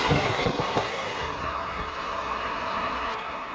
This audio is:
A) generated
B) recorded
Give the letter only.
A